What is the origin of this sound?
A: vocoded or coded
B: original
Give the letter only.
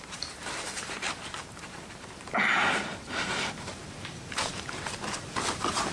A